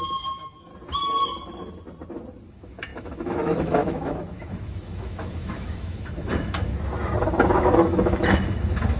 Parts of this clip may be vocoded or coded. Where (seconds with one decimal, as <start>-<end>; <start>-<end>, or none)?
0.0-0.7; 2.5-6.7; 7.6-9.0